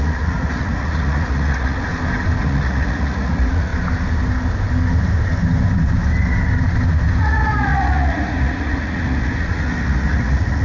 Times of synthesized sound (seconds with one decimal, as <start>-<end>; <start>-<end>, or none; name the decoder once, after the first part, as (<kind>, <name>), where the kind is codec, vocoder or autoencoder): 0.0-1.9 (vocoder, Vocos); 2.4-3.7; 7.2-10.6